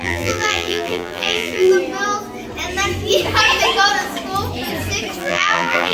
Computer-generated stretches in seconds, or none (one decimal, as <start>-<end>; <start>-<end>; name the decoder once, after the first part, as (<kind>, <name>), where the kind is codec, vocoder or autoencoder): 0.0-1.7 (vocoder, BigVGAN v2); 5.2-5.9